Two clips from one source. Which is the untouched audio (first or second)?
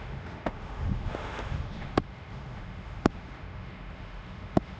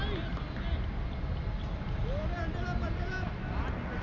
second